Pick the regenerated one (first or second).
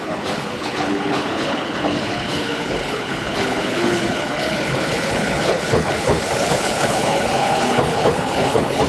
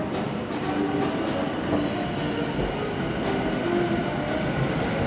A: first